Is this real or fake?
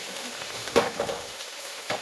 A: fake